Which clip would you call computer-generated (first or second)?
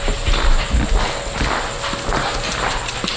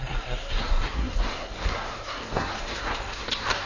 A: second